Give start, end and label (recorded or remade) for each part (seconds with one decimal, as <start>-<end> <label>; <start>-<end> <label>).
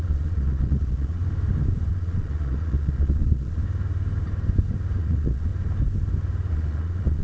0.0-1.2 remade; 1.2-1.9 recorded; 1.9-3.6 remade; 3.6-5.0 recorded; 5.0-5.5 remade; 5.5-6.5 recorded; 6.5-7.2 remade